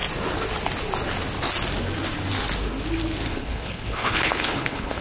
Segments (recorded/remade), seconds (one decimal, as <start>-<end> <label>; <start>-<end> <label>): 0.0-3.3 recorded; 3.3-5.0 remade